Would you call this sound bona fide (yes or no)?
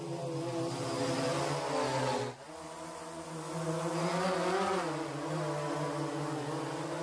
yes